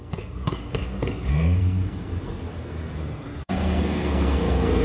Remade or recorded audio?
remade